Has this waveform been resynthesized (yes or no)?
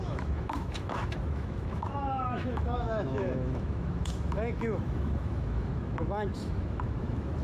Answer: yes